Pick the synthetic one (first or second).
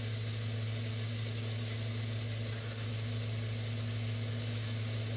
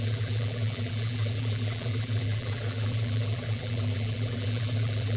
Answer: second